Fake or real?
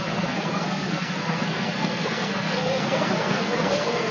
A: fake